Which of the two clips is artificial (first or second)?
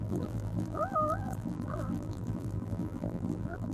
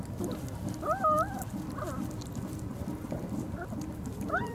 first